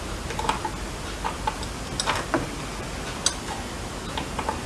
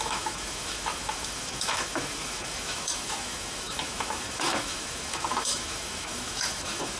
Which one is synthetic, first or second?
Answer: second